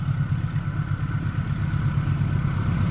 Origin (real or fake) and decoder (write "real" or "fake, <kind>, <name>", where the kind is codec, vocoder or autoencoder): real